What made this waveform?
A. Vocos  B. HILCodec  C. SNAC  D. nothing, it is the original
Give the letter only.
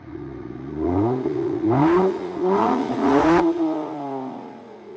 A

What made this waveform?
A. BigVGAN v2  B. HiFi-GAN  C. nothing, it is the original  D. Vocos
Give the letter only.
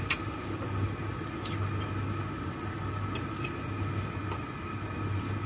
C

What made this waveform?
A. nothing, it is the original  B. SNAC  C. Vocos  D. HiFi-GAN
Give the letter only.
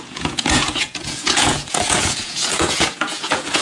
C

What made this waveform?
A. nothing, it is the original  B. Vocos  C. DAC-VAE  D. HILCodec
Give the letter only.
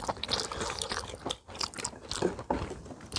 A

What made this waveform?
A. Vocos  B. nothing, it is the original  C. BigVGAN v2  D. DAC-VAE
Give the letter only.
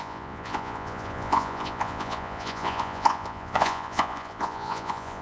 A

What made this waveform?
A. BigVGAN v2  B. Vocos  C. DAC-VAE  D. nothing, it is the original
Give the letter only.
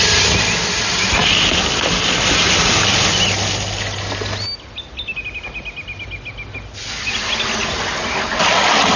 D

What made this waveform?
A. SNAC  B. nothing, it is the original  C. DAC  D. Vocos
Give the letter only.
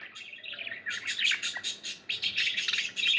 B